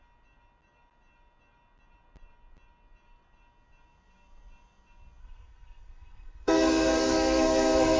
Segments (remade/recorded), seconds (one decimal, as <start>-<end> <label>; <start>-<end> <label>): 0.0-5.2 recorded; 5.2-8.0 remade